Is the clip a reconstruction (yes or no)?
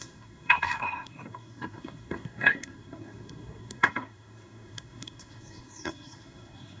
yes